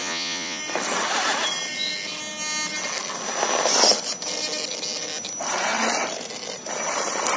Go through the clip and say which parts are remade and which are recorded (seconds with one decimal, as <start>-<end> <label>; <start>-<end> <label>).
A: 0.0-0.6 remade; 0.6-7.4 recorded